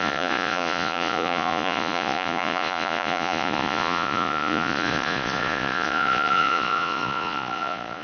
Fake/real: fake